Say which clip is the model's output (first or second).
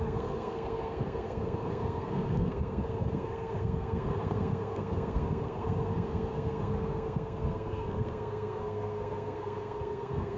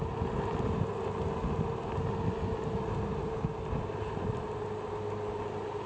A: first